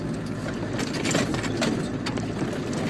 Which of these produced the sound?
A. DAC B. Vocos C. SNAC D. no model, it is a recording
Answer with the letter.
D